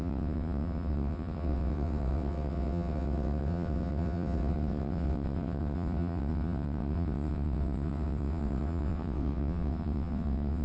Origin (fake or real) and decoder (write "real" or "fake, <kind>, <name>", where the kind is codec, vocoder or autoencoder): fake, vocoder, WaveNeXt